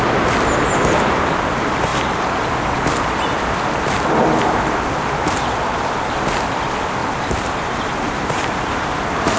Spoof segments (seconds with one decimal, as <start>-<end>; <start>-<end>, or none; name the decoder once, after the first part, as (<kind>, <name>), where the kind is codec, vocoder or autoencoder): 7.0-8.7 (vocoder, BigVGAN v2)